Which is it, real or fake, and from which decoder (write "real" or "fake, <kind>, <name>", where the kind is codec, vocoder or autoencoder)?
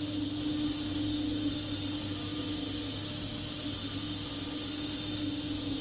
real